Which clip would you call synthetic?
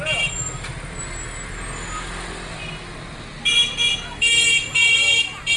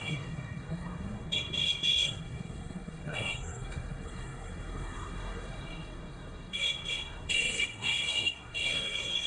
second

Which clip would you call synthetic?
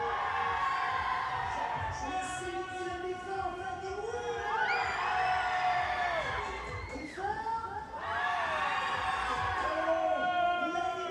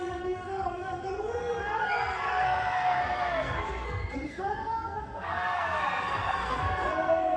second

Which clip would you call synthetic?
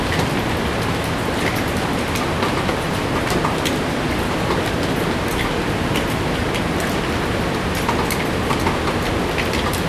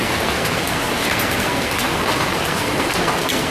second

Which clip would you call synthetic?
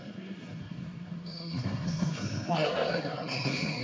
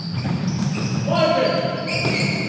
first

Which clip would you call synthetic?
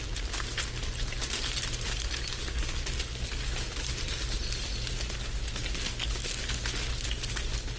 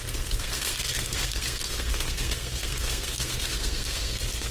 second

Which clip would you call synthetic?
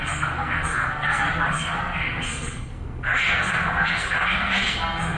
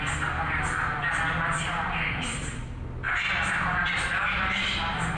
first